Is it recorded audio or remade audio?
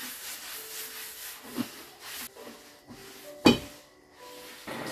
recorded